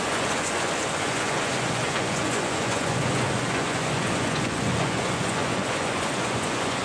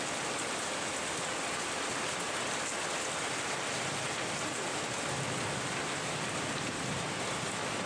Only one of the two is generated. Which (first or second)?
first